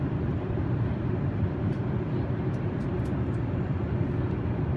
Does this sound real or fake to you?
fake